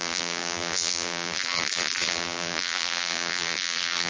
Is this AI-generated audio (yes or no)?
yes